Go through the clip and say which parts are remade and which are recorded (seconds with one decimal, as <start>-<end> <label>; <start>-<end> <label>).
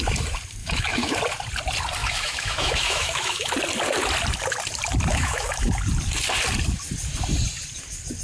0.0-0.6 recorded; 0.6-1.2 remade; 1.2-2.0 recorded; 2.0-3.5 remade; 3.5-5.1 recorded; 5.1-5.7 remade; 5.7-8.2 recorded